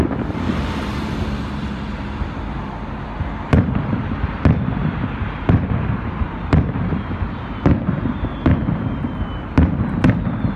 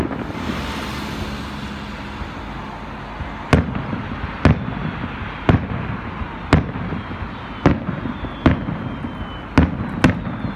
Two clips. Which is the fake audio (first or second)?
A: first